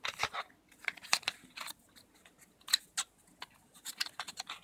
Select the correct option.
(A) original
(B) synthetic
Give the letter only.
A